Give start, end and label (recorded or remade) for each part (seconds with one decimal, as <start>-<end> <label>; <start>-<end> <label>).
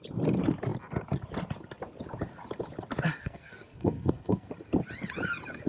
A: 0.0-3.2 recorded; 3.2-4.5 remade; 4.5-5.7 recorded